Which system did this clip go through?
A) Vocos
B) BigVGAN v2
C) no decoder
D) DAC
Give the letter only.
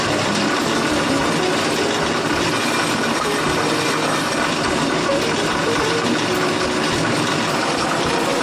C